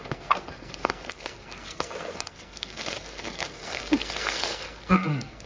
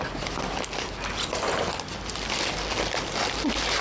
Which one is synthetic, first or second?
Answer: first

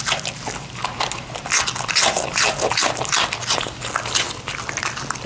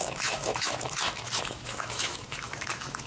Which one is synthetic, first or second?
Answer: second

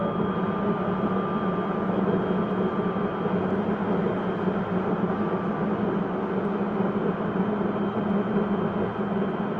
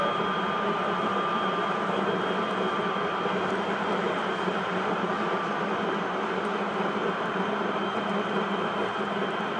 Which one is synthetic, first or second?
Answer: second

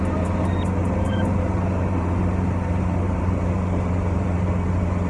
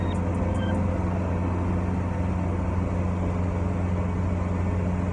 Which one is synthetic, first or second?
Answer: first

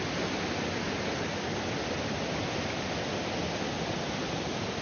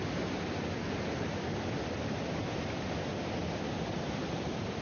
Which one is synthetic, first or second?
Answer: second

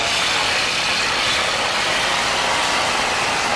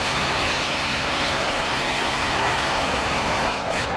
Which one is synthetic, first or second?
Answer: second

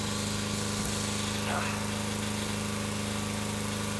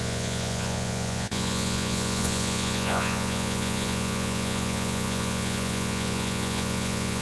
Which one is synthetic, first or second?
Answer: second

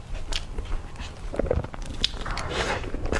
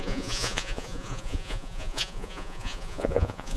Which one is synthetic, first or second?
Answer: second